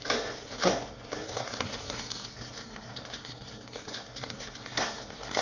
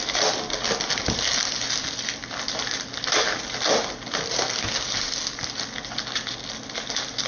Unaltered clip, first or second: second